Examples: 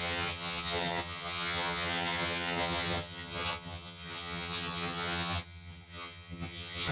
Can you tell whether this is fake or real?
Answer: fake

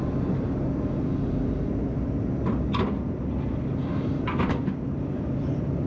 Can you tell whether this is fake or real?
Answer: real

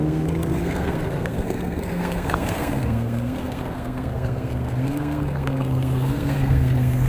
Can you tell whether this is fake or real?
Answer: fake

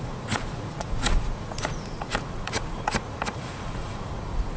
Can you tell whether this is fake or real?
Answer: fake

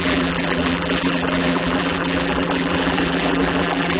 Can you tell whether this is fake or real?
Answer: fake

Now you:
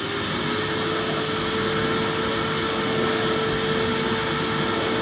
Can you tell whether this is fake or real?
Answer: real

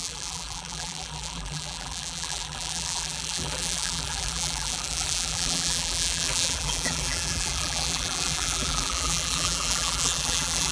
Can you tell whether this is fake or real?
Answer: fake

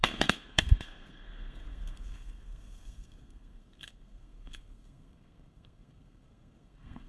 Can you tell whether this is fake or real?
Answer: fake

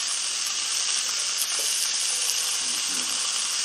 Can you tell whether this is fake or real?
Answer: real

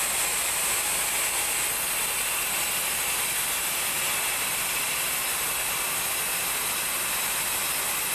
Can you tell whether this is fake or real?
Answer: real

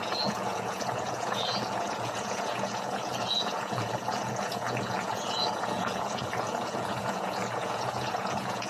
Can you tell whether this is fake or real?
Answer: fake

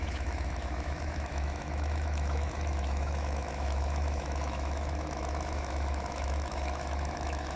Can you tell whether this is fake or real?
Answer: fake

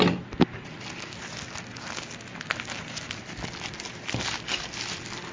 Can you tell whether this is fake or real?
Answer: real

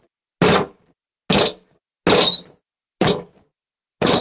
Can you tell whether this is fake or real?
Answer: real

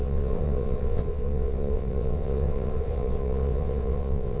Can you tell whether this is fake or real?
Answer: fake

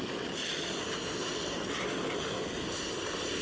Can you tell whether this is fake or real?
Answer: real